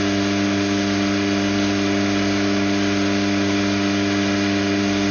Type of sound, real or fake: real